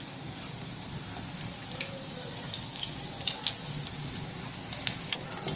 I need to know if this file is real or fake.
real